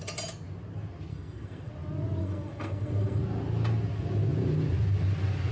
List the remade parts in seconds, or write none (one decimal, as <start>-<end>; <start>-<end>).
1.1-1.7; 2.2-3.2